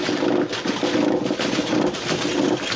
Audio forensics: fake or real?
real